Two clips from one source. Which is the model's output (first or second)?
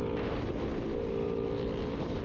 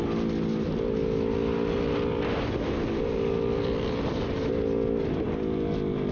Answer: first